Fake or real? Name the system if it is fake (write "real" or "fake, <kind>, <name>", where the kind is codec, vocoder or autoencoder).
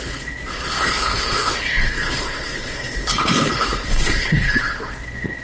fake, codec, HILCodec